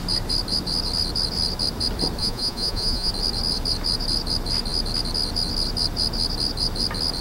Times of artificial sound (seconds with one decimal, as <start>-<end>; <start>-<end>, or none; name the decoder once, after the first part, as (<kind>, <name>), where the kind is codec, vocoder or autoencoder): 2.2-3.1 (vocoder, Vocos)